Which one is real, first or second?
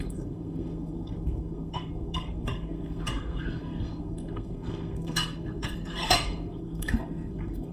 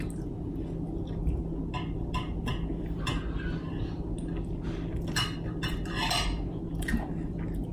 second